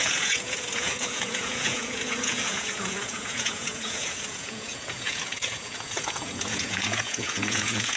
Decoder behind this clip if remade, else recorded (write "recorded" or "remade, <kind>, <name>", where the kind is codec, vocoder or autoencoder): remade, vocoder, Vocos